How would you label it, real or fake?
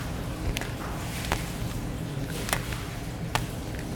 real